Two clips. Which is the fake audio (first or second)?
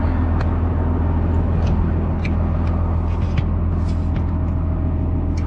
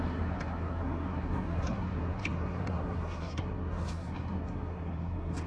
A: second